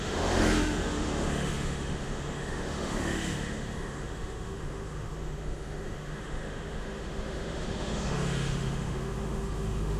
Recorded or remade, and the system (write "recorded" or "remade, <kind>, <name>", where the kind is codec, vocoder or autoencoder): remade, autoencoder, DAC-VAE